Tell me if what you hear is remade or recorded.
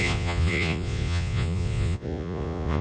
remade